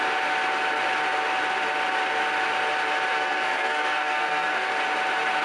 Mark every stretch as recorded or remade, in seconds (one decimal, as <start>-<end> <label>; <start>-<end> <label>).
0.0-3.1 recorded; 3.1-4.7 remade; 4.7-5.4 recorded